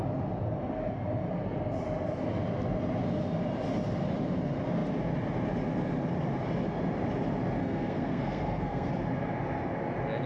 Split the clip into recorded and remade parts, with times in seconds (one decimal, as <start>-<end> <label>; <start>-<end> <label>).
0.0-7.6 recorded; 7.6-8.9 remade; 8.9-10.3 recorded